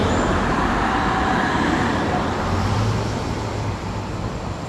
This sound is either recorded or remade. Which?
remade